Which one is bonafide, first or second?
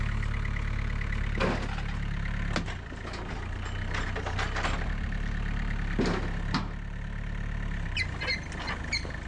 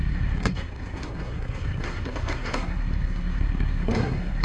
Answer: first